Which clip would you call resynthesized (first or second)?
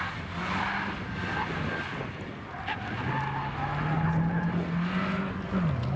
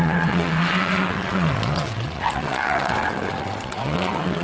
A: second